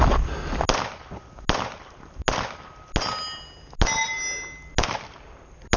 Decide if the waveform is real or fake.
real